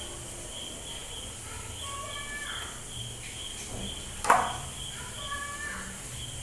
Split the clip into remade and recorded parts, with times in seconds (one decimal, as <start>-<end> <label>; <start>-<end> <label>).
0.0-6.4 recorded